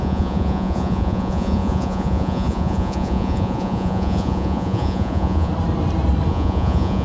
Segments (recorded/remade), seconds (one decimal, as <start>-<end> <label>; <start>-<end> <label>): 0.0-5.5 remade; 5.5-6.3 recorded; 6.3-7.0 remade